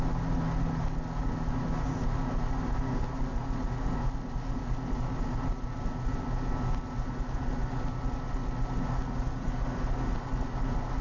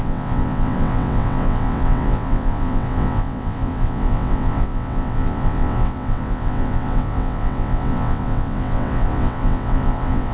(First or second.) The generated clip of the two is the second